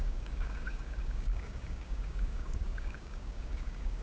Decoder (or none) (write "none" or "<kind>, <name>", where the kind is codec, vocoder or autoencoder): codec, DAC